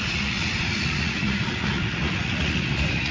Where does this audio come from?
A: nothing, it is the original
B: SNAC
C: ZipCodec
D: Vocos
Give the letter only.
D